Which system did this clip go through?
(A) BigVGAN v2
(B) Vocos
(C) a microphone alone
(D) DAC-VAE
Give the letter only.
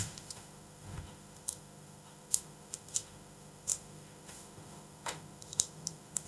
D